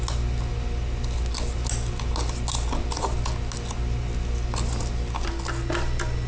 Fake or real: real